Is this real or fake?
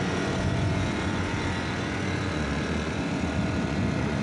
fake